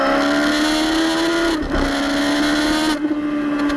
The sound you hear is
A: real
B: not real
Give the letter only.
A